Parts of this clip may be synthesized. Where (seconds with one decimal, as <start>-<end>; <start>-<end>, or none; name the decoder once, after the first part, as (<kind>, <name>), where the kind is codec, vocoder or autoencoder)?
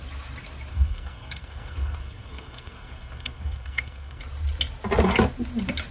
0.7-4.2 (codec, SNAC)